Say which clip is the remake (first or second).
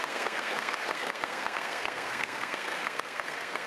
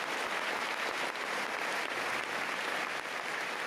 first